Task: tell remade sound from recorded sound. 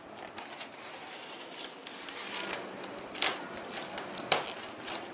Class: recorded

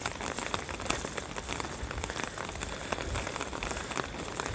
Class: recorded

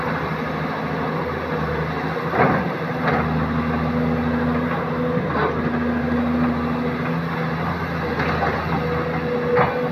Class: recorded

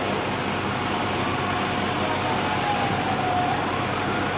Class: recorded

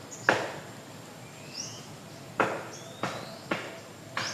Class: recorded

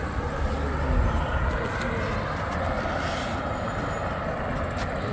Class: recorded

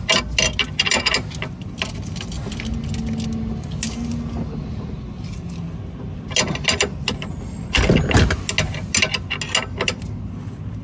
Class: recorded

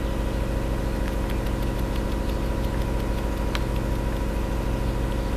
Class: recorded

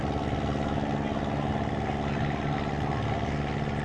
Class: recorded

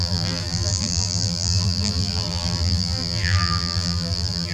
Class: remade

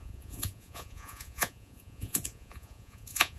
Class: remade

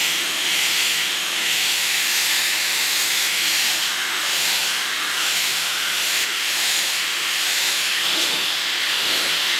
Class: remade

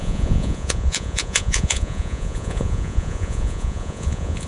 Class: remade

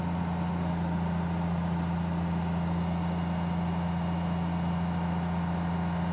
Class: recorded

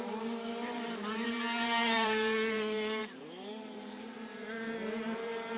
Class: remade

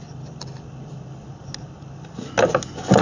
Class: recorded